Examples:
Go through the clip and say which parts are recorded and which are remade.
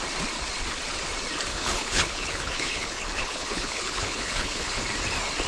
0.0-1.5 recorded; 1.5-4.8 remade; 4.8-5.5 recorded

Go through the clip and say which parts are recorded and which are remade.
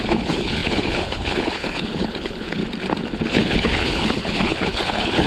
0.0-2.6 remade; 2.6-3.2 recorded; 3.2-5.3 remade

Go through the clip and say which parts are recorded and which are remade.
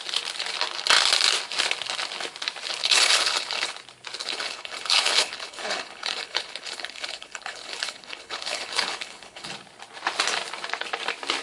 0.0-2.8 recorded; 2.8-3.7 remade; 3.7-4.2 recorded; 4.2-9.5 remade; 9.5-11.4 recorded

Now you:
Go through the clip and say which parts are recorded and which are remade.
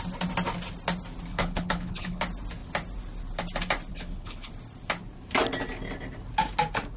0.0-1.3 recorded; 1.3-2.2 remade; 2.2-3.9 recorded; 3.9-4.5 remade; 4.5-7.0 recorded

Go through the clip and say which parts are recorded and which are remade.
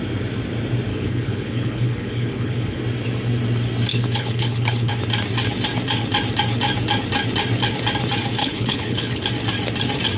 0.0-0.9 recorded; 0.9-2.8 remade; 2.8-3.9 recorded; 3.9-4.9 remade; 4.9-8.4 recorded; 8.4-9.3 remade; 9.3-10.2 recorded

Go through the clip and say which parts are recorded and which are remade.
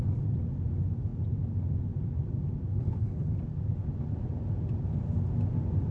0.0-2.7 recorded; 2.7-3.3 remade; 3.3-5.9 recorded